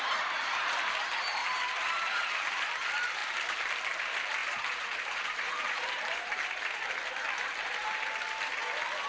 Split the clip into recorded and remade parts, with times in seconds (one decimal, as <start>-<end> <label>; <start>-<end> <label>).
0.0-1.4 recorded; 1.4-2.3 remade; 2.3-3.2 recorded; 3.2-3.7 remade; 3.7-4.4 recorded; 4.4-6.9 remade; 6.9-9.1 recorded